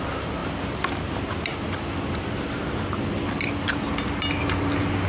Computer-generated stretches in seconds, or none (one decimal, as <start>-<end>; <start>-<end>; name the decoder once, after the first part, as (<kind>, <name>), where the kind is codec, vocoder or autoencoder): none